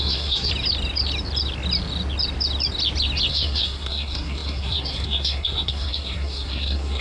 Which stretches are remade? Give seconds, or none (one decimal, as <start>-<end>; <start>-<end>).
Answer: 0.0-0.5; 3.3-7.0